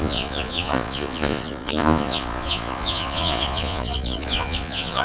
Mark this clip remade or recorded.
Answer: remade